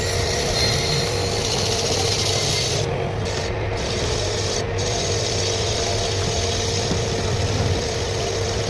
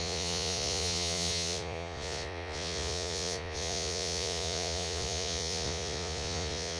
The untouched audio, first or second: first